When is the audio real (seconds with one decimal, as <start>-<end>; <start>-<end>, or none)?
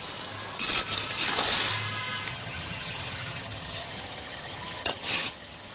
0.0-2.3